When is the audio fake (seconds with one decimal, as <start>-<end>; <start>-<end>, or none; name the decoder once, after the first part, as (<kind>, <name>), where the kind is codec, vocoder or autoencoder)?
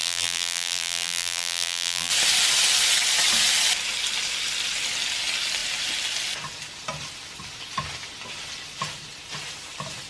0.0-2.1 (vocoder, BigVGAN v2)